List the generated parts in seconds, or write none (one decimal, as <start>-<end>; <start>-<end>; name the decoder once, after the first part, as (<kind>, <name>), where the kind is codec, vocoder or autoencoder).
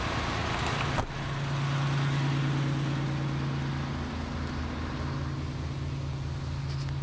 none